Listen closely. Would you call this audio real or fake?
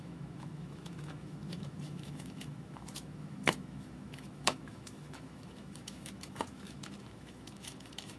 fake